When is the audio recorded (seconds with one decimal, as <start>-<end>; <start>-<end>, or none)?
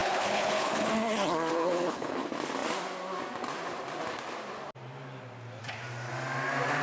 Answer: 0.9-1.5; 2.2-6.8